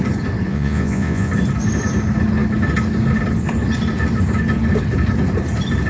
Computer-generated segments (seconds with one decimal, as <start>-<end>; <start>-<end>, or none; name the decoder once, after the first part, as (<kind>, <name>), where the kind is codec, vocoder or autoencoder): 0.5-1.3 (vocoder, Vocos)